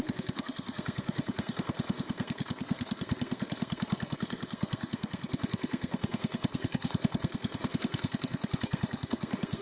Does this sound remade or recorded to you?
remade